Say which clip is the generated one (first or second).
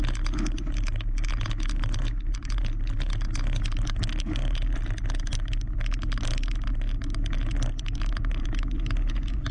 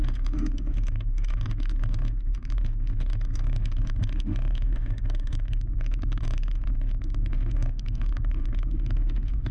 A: second